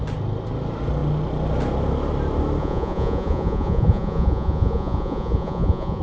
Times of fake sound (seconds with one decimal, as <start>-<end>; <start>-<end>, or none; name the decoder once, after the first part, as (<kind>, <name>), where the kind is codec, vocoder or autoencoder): 2.6-6.0 (vocoder, Vocos)